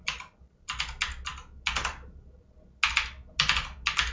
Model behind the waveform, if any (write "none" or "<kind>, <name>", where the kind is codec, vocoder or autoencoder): none